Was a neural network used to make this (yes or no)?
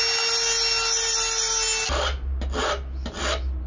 no